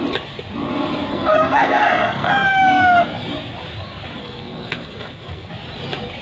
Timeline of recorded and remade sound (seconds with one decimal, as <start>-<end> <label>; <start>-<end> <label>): 0.0-1.1 recorded; 1.1-2.3 remade; 2.3-4.2 recorded; 4.2-5.5 remade; 5.5-6.2 recorded